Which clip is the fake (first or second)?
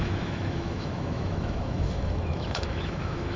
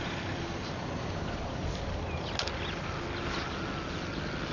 first